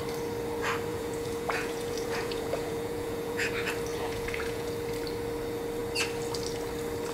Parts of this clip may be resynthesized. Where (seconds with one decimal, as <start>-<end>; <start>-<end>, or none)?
0.9-3.5; 3.9-4.7